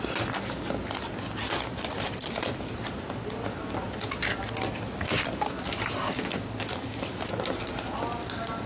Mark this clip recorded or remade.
recorded